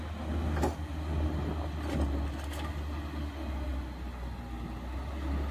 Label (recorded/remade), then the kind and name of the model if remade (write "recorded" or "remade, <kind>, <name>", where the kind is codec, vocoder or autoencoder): recorded